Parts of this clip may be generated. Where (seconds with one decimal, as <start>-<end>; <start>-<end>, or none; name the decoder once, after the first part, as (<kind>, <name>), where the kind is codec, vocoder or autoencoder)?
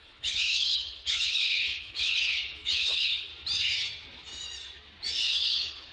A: 0.0-3.3 (codec, HILCodec); 5.2-5.9